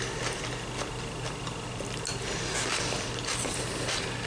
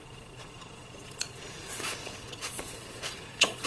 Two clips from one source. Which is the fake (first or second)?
second